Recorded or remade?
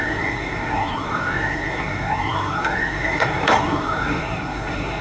remade